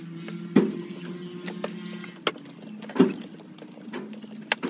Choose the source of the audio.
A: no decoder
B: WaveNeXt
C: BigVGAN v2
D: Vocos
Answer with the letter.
A